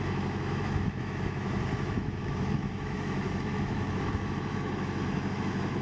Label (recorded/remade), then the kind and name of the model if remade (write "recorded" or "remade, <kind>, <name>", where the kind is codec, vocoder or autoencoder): remade, autoencoder, DAC-VAE